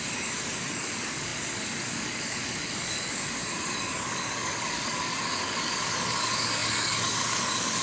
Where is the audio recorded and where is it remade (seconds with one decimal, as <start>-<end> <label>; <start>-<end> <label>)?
0.0-7.8 remade